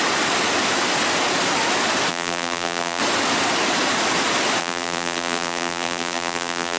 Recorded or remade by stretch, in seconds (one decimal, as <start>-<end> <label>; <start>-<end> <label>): 0.0-2.1 recorded; 2.1-3.0 remade; 3.0-4.6 recorded; 4.6-6.8 remade

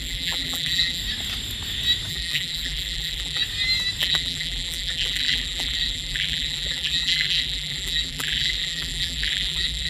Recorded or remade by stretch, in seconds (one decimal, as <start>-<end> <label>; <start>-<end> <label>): 0.0-1.0 remade; 1.0-2.1 recorded; 2.1-3.4 remade; 3.4-4.0 recorded; 4.0-9.9 remade

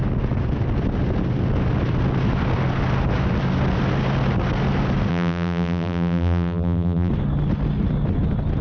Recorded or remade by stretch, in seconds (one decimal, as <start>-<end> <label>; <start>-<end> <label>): 0.0-5.1 recorded; 5.1-7.1 remade; 7.1-8.6 recorded

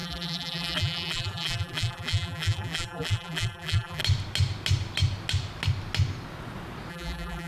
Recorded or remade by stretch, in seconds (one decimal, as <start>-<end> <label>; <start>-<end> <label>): 0.0-4.0 remade; 4.0-6.9 recorded; 6.9-7.5 remade

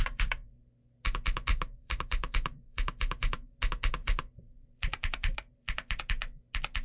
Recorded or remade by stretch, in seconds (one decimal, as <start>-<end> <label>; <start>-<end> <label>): 0.0-0.7 remade; 0.7-1.5 recorded; 1.5-3.5 remade; 3.5-4.0 recorded; 4.0-6.0 remade; 6.0-6.8 recorded

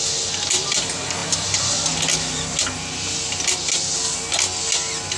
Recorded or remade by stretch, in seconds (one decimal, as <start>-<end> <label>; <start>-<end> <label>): 0.0-5.2 recorded

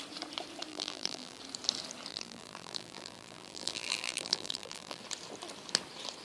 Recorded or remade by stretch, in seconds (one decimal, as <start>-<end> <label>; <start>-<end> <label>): 0.0-0.7 recorded; 0.7-1.4 remade; 1.4-2.1 recorded; 2.1-5.0 remade; 5.0-6.2 recorded

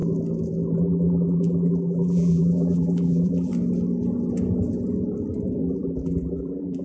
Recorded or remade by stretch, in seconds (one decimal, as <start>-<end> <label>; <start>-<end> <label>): 0.0-0.8 recorded; 0.8-3.5 remade; 3.5-5.6 recorded; 5.6-6.8 remade